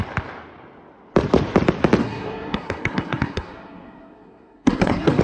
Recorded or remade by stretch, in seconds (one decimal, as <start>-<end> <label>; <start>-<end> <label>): 0.0-2.0 recorded; 2.0-5.2 remade